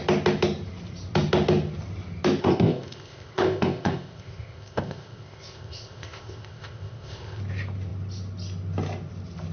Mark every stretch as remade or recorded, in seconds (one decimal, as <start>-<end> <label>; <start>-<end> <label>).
0.0-2.4 recorded; 2.4-7.4 remade; 7.4-9.5 recorded